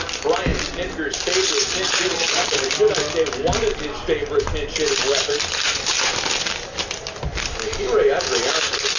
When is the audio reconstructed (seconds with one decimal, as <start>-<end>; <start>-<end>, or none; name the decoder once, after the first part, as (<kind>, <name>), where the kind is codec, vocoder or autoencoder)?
none